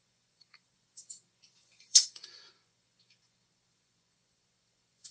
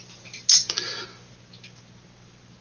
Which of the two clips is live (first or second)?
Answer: second